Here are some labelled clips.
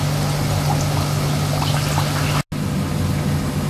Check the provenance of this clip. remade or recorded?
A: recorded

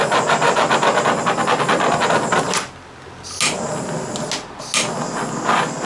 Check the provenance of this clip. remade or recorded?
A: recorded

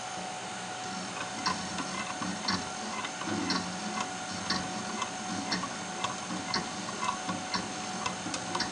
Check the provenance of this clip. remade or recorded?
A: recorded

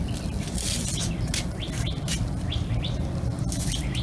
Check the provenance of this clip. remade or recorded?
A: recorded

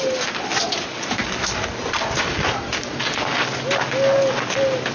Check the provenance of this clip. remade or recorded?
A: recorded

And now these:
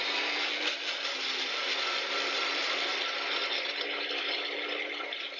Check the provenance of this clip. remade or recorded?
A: recorded